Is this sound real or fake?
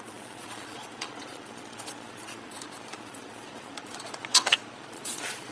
fake